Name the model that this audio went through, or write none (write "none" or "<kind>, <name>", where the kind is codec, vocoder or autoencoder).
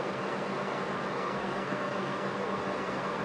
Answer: codec, SNAC